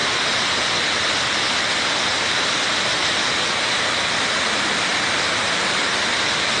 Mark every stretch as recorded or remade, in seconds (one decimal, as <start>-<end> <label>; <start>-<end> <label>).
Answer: 0.0-6.6 recorded